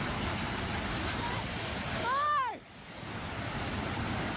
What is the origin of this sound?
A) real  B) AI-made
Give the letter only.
A